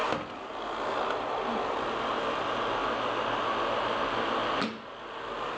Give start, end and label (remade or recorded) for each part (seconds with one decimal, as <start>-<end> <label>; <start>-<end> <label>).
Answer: 0.0-5.6 recorded